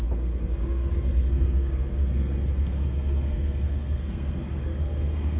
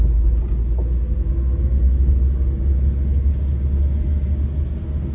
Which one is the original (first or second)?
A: second